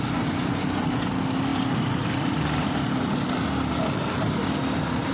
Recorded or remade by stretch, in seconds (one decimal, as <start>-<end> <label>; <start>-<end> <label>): 0.0-5.1 recorded